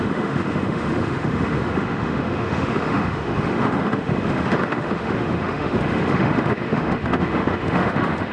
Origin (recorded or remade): remade